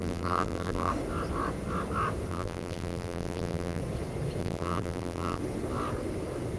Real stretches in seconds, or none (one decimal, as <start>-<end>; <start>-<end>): 0.9-2.3; 3.8-4.4; 5.4-6.6